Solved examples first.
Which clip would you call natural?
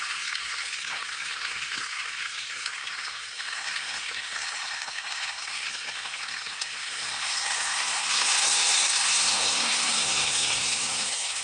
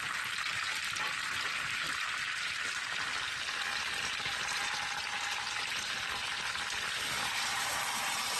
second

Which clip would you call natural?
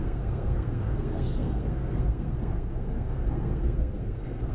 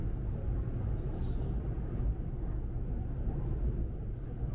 second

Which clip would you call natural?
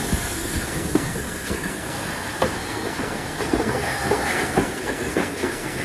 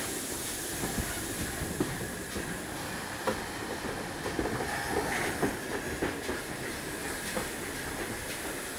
second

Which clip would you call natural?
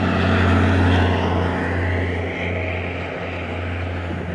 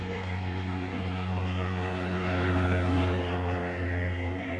first